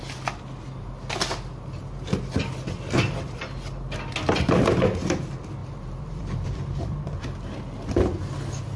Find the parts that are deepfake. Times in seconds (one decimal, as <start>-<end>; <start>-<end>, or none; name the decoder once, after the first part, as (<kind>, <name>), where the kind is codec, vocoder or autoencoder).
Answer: 5.6-7.2 (vocoder, BigVGAN v2)